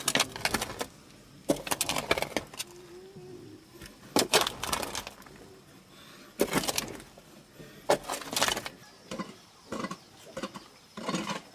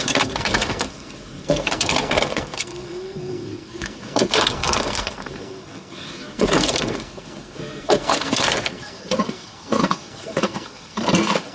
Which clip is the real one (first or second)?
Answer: first